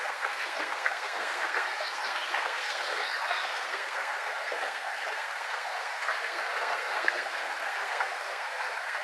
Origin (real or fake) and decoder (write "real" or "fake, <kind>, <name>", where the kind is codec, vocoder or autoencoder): fake, codec, SNAC